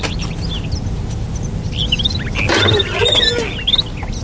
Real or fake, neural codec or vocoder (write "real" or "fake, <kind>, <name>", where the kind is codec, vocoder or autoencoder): real